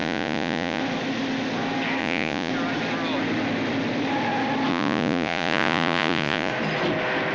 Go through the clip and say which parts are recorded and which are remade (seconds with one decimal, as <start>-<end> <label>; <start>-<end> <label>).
0.0-0.8 remade; 0.8-2.0 recorded; 2.0-2.5 remade; 2.5-4.7 recorded; 4.7-6.5 remade; 6.5-7.3 recorded